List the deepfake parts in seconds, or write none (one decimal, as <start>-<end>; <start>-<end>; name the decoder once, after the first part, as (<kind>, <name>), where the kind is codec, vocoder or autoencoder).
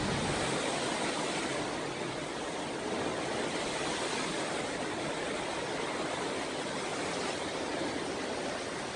none